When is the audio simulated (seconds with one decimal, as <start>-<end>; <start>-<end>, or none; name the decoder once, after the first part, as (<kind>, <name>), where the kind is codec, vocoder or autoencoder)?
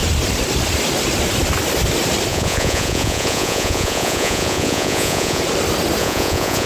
2.3-5.4 (vocoder, Vocos); 6.0-6.7